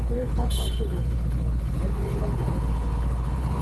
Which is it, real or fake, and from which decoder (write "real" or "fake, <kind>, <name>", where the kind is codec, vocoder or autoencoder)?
fake, codec, HILCodec